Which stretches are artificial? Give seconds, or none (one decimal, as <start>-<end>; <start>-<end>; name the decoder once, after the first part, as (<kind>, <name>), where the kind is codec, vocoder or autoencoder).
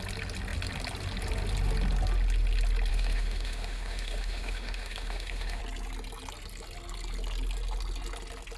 2.9-5.6 (autoencoder, DAC-VAE)